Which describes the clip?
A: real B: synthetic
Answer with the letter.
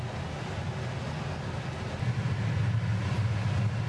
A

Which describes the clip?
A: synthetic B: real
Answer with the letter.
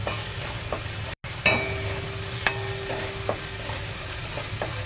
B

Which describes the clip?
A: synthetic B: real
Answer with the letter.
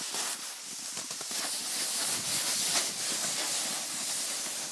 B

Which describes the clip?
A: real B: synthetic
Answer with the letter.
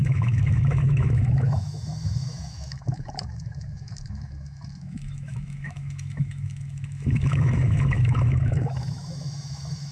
B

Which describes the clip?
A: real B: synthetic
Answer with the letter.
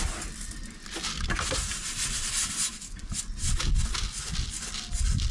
A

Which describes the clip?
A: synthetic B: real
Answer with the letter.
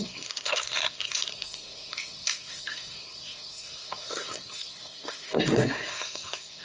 A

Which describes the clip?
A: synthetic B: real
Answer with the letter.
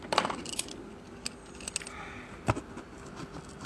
B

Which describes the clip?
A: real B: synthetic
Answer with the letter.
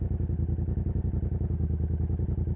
A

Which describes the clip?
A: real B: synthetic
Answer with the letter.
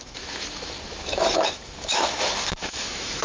B